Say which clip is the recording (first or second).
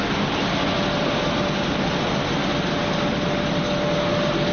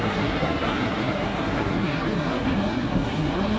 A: first